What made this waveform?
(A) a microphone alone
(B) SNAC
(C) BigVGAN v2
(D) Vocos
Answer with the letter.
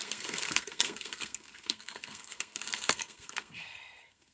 B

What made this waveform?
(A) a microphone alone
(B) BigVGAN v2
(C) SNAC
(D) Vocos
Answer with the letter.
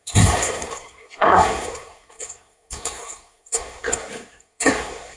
C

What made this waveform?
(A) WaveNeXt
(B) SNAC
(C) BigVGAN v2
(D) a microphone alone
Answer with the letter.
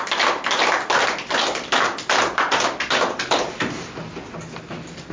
D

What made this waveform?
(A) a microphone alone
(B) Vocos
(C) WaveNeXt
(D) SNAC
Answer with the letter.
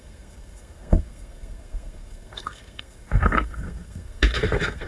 D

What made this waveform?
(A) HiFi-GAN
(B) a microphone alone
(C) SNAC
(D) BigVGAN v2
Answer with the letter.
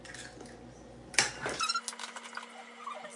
B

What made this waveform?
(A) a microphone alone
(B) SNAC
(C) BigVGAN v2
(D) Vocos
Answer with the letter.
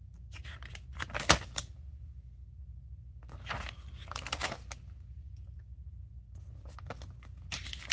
A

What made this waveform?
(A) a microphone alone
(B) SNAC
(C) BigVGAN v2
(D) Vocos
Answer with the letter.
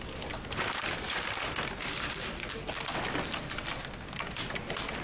A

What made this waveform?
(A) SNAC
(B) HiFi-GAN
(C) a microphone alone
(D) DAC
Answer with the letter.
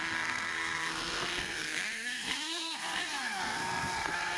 A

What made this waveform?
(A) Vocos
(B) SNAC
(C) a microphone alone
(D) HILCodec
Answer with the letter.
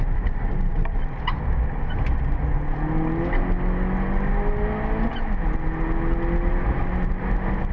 C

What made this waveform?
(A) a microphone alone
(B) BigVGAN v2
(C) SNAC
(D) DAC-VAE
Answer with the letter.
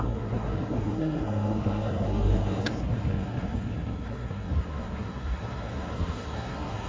C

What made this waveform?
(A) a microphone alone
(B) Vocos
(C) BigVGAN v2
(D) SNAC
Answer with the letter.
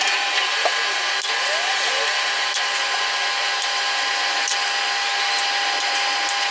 A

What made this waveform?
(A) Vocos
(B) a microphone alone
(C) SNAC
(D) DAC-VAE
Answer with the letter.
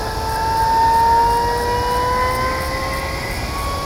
B